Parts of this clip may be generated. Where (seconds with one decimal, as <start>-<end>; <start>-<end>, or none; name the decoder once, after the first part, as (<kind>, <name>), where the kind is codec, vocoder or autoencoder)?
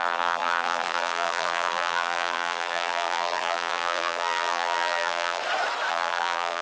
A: 0.0-5.4 (vocoder, BigVGAN v2); 5.9-6.6